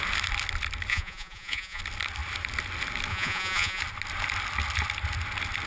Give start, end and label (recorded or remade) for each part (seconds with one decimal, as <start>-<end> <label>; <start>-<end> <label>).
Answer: 0.0-0.9 recorded; 0.9-1.8 remade; 1.8-3.1 recorded; 3.1-3.8 remade; 3.8-5.7 recorded